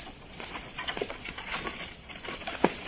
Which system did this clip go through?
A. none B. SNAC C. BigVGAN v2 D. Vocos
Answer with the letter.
D